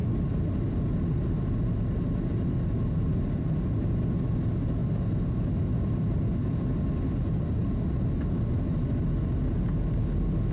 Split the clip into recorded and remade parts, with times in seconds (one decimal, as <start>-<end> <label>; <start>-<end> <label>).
0.0-10.5 recorded